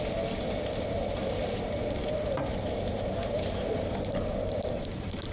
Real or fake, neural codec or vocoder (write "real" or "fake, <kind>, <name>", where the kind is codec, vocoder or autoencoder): fake, vocoder, BigVGAN v2